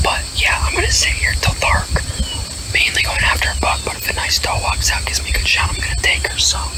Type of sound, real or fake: real